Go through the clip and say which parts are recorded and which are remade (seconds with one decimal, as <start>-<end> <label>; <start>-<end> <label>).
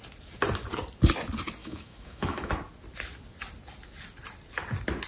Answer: 0.0-1.6 recorded; 1.6-2.5 remade; 2.5-5.1 recorded